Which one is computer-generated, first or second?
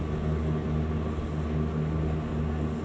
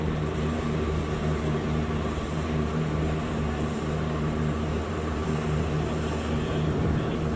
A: second